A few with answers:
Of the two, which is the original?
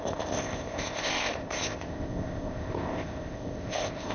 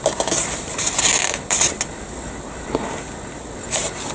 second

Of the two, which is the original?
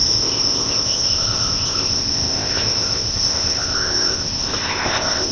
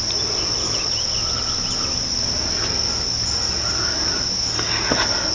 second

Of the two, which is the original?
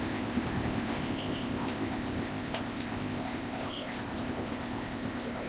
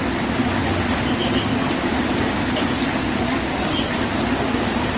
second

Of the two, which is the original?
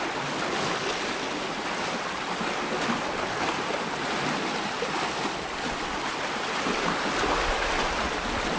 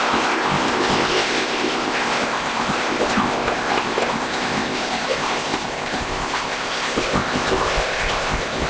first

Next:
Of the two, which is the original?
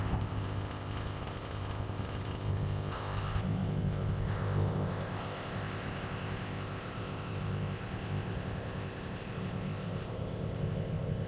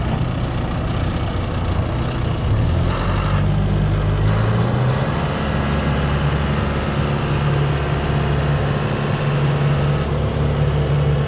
second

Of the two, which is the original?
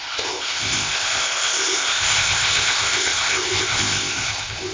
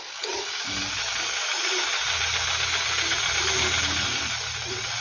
second